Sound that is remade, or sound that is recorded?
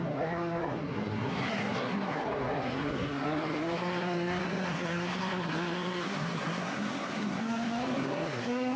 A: remade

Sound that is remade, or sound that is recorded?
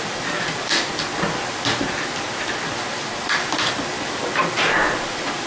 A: remade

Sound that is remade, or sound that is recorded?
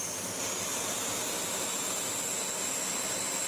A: remade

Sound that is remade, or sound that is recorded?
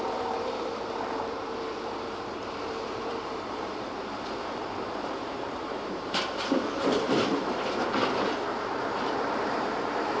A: remade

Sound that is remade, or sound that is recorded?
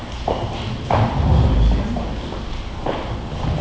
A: recorded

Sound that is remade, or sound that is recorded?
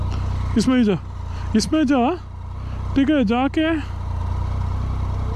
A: recorded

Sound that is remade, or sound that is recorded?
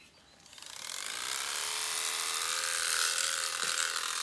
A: remade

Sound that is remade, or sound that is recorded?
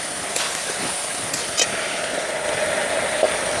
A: recorded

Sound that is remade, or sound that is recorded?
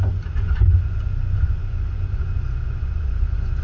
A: remade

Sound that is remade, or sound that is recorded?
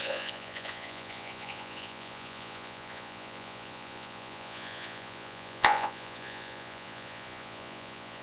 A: remade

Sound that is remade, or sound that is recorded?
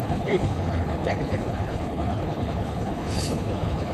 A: remade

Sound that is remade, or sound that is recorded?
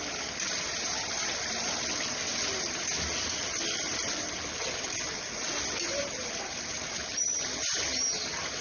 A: recorded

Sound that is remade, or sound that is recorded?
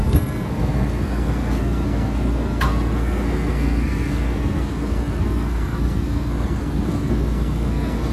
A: remade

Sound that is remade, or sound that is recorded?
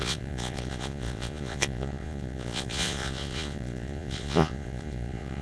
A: remade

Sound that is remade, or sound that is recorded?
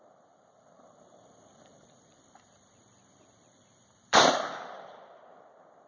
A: remade